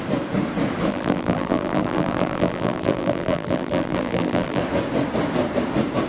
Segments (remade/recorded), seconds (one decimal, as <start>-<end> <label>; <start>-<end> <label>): 0.0-0.9 recorded; 0.9-4.6 remade; 4.6-6.1 recorded